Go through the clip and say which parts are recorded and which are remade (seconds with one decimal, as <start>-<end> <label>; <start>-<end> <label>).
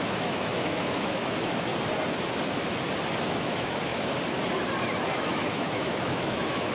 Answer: 0.0-1.7 remade; 1.7-3.2 recorded; 3.2-3.9 remade; 3.9-5.1 recorded; 5.1-6.7 remade